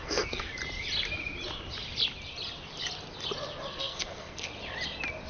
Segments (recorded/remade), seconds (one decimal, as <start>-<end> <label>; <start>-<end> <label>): 0.0-0.5 remade; 0.5-3.7 recorded; 3.7-4.5 remade; 4.5-5.3 recorded